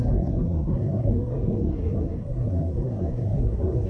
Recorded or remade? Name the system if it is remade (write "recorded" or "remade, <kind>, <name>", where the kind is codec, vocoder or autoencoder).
remade, codec, SNAC